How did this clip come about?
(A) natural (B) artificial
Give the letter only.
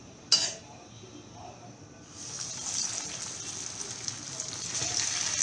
A